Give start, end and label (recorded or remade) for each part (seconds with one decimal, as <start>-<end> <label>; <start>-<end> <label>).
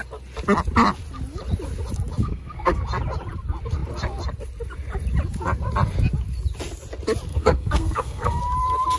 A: 0.0-2.2 recorded; 2.2-2.8 remade; 2.8-7.3 recorded; 7.3-8.4 remade; 8.4-9.0 recorded